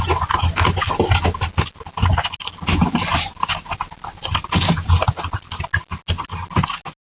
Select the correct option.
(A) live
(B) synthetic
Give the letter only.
A